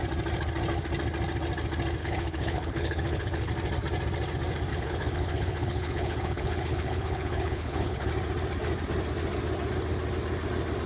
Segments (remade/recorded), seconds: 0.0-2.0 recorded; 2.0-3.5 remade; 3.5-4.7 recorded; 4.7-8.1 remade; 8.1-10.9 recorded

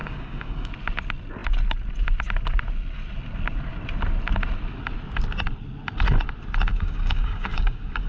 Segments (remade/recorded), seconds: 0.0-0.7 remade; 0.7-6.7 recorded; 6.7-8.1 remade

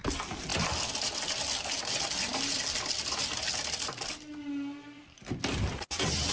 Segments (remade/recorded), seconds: 0.0-6.3 recorded

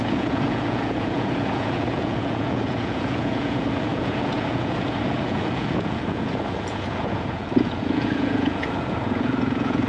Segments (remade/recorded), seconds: 0.0-9.9 remade

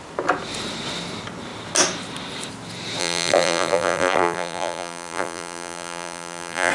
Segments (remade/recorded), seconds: 0.0-3.0 recorded; 3.0-6.7 remade

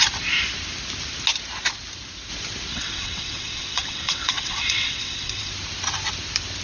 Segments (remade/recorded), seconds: 0.0-2.7 recorded; 2.7-5.5 remade; 5.5-6.6 recorded

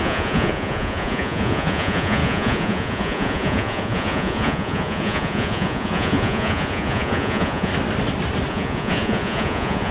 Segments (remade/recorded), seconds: 0.0-7.7 remade; 7.7-8.5 recorded; 8.5-9.9 remade